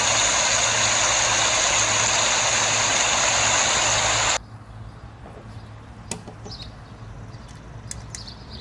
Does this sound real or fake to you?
real